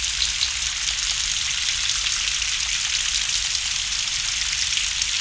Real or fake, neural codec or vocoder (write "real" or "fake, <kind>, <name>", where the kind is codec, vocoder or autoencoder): real